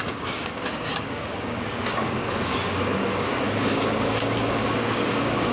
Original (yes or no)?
no